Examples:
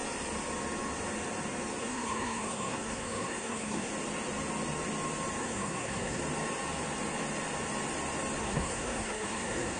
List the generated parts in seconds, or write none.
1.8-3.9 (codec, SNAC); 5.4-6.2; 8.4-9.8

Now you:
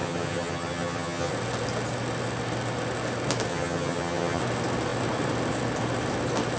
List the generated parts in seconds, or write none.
0.0-1.3 (vocoder, HiFi-GAN); 3.5-4.4

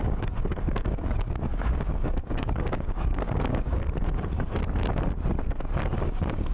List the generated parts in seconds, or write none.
0.0-4.6 (codec, DAC); 6.0-6.5